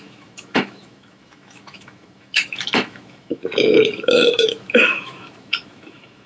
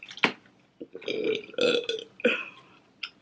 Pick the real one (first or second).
second